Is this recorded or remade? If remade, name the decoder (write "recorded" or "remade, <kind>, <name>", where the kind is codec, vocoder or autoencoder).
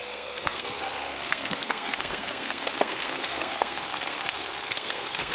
remade, codec, SNAC